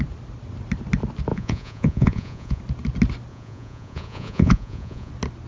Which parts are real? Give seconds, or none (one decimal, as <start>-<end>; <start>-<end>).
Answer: 0.0-1.3; 2.6-3.3; 5.1-5.5

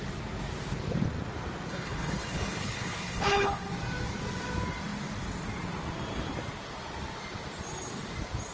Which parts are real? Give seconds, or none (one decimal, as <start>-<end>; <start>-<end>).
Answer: 0.0-1.7; 3.6-8.5

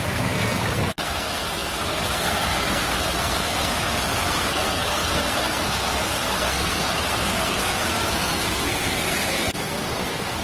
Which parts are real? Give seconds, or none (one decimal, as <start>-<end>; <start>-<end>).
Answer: none

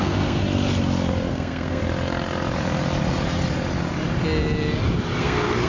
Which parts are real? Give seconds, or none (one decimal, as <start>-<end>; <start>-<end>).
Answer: 0.4-1.3; 1.8-5.2

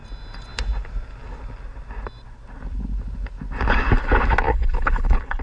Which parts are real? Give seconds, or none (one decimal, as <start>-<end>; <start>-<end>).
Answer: 0.0-4.5

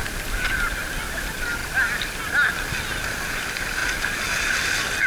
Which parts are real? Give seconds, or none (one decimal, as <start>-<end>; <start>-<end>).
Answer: 0.9-5.1